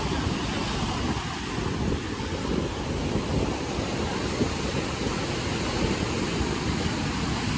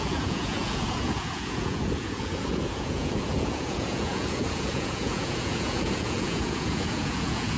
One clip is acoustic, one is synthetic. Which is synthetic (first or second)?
second